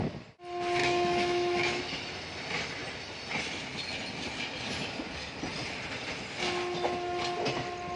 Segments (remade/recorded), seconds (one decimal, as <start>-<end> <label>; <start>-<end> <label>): 0.0-0.8 recorded; 0.8-1.8 remade; 1.8-8.0 recorded